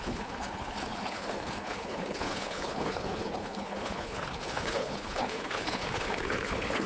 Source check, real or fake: fake